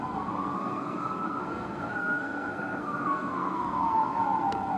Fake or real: fake